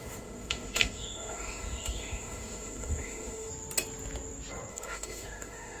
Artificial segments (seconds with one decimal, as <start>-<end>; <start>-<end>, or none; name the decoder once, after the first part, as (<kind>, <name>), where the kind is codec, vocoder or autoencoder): 0.0-3.5 (autoencoder, DAC-VAE); 4.7-5.8